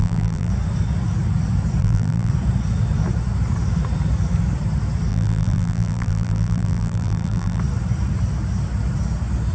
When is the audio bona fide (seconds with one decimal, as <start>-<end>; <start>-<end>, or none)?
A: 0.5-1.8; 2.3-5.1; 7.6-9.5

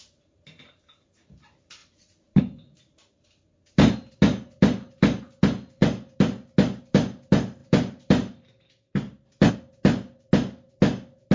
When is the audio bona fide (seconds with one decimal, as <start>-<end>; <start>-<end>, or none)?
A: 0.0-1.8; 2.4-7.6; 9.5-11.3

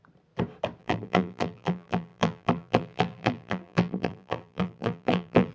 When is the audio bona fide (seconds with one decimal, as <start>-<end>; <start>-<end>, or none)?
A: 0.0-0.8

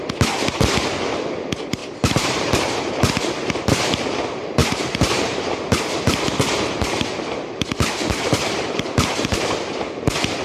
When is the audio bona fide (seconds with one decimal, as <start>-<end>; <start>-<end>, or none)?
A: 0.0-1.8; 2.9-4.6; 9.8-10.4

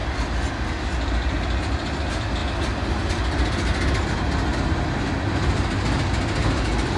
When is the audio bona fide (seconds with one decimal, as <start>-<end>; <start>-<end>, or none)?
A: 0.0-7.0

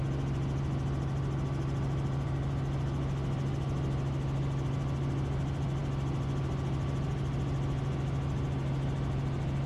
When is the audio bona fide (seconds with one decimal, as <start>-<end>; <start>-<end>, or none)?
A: 0.0-9.7